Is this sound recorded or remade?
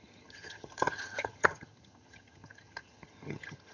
remade